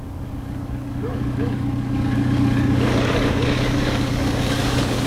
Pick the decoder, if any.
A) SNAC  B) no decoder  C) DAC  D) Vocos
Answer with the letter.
C